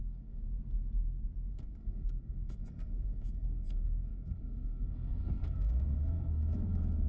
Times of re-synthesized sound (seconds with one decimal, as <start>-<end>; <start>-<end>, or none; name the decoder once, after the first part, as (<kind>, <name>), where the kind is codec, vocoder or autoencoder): 0.0-0.4 (codec, SNAC); 1.5-7.1